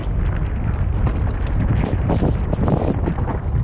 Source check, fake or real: real